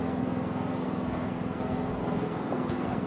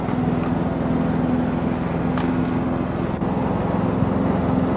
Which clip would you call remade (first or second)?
first